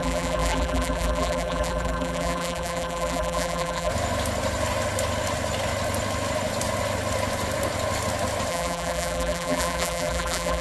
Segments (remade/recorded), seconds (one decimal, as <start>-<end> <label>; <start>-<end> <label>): 0.0-3.9 remade; 3.9-8.5 recorded; 8.5-10.6 remade